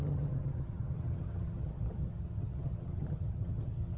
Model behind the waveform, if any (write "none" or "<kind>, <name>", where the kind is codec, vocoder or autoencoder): vocoder, HiFi-GAN